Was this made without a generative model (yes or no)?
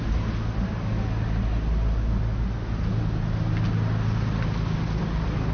yes